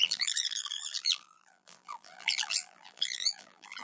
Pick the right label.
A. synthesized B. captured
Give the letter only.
A